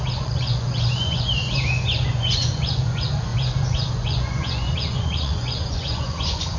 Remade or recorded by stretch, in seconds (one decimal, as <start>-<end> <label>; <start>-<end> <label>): 0.0-6.6 remade